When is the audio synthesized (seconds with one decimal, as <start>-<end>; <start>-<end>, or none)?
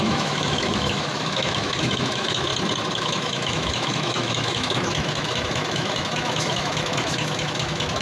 0.0-2.5; 3.0-8.0